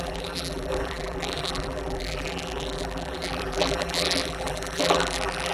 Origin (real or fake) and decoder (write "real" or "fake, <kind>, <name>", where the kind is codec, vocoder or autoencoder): fake, vocoder, BigVGAN v2